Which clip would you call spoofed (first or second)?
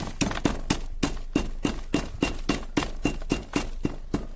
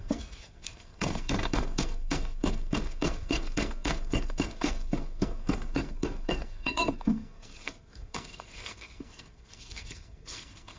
second